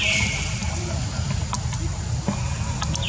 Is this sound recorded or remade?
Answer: recorded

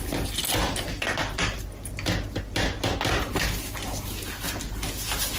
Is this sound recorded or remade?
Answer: recorded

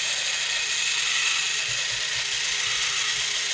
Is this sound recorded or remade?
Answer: recorded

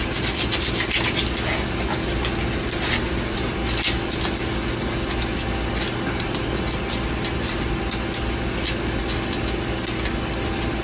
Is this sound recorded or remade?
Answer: recorded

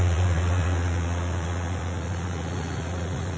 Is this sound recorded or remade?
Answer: remade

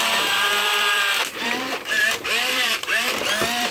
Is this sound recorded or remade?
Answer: remade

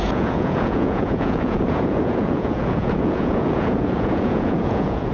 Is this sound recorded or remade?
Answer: remade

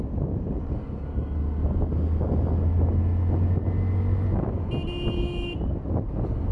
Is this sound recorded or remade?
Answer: recorded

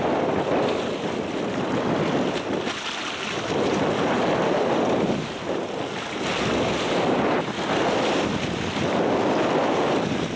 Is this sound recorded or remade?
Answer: recorded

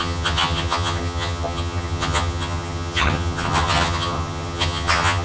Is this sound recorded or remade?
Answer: remade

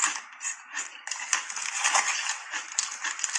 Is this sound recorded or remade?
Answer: recorded